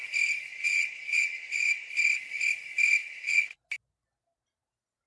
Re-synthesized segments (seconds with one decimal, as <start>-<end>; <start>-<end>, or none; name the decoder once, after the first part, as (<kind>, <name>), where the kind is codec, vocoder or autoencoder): 0.5-1.9 (vocoder, Vocos); 3.0-3.6